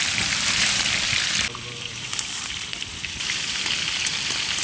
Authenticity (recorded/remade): remade